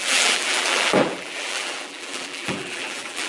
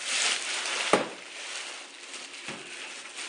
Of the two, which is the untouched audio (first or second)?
second